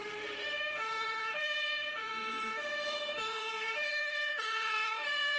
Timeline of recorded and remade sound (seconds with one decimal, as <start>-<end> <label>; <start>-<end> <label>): 0.0-5.4 remade